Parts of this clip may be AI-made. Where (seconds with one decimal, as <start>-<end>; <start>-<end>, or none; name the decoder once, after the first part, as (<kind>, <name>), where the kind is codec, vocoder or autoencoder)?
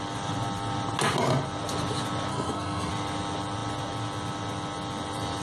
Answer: 2.3-2.9 (codec, SNAC)